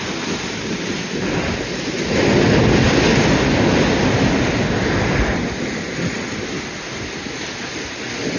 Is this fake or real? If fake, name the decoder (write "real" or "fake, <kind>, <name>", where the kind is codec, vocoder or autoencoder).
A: real